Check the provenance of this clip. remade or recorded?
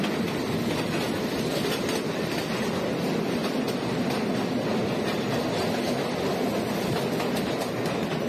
recorded